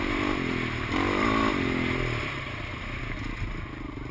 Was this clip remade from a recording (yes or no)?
no